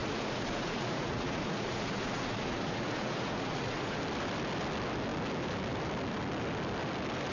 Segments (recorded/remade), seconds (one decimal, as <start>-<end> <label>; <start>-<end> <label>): 0.0-4.0 remade; 4.0-7.3 recorded